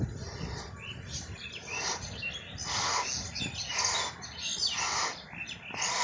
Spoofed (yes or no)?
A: no